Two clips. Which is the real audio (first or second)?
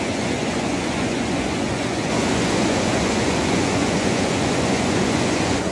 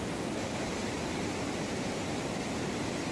second